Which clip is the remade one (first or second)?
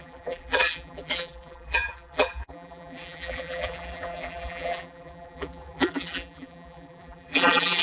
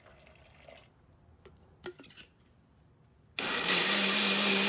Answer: first